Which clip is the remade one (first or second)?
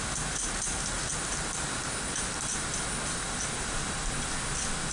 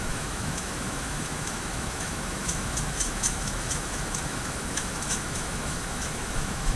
second